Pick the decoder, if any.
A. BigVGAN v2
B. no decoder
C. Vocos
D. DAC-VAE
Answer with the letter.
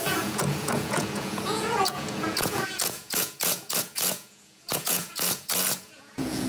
C